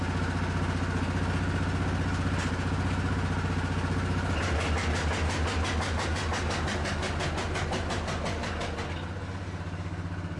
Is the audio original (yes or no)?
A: yes